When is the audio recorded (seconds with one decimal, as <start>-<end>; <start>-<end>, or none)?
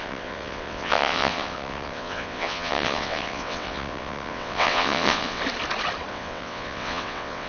5.4-6.1